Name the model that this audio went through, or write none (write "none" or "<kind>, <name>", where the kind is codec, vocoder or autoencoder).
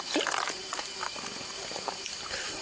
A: vocoder, BigVGAN v2